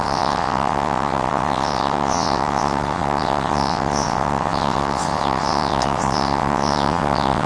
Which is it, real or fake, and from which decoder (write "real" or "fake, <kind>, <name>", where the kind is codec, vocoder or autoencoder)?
fake, vocoder, WaveNeXt